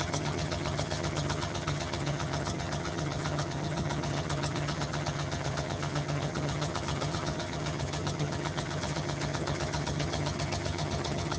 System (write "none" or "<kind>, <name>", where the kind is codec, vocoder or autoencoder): vocoder, HiFi-GAN